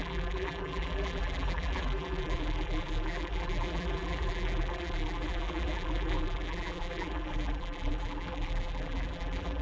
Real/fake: fake